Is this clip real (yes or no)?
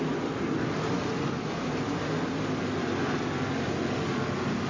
yes